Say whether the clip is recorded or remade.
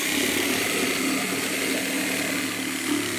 recorded